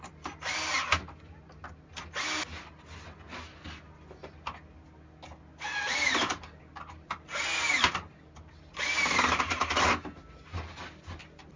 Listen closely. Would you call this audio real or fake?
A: real